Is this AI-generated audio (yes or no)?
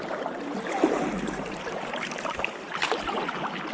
no